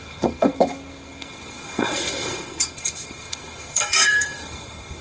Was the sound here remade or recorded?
remade